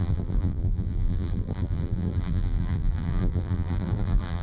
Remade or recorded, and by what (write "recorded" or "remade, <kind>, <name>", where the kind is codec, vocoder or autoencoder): remade, vocoder, BigVGAN v2